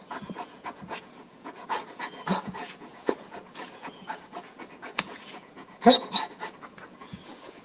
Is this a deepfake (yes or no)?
yes